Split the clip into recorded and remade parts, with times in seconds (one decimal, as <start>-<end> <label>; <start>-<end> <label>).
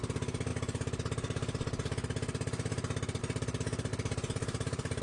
0.0-3.9 recorded; 3.9-5.0 remade